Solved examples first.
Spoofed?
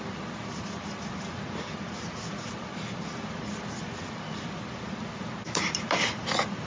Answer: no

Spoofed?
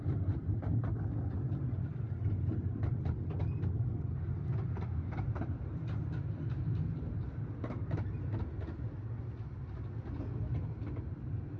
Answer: no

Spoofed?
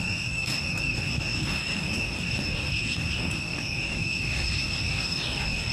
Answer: yes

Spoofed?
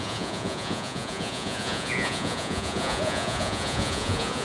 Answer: yes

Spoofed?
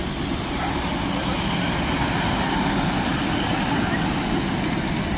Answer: no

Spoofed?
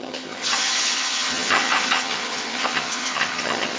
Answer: yes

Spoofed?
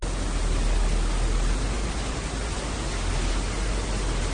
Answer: no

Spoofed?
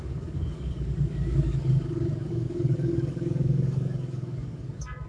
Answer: yes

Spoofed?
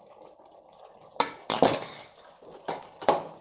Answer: no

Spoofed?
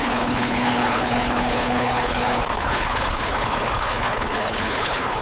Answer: yes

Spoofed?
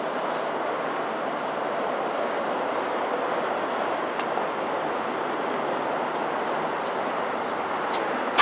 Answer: no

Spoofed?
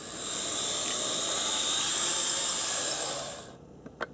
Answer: yes